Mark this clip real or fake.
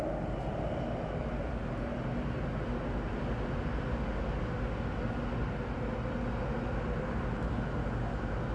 real